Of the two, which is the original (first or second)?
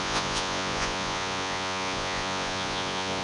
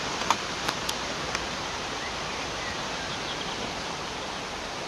second